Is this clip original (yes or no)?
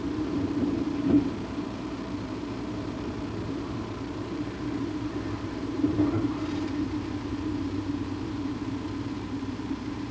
no